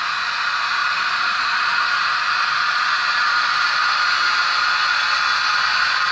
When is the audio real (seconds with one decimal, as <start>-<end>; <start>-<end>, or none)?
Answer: 0.0-0.8; 1.8-2.4; 3.3-6.1